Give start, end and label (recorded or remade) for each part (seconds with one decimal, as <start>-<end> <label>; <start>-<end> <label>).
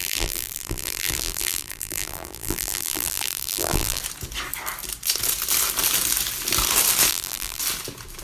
0.0-4.0 remade; 4.0-7.1 recorded; 7.1-7.6 remade; 7.6-8.2 recorded